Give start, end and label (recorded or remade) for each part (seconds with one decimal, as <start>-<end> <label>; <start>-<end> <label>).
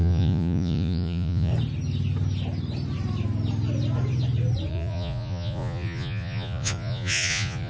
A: 0.0-1.5 remade; 1.5-4.7 recorded; 4.7-7.7 remade